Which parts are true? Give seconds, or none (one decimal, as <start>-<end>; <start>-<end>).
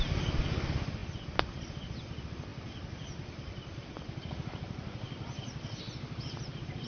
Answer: 1.0-2.0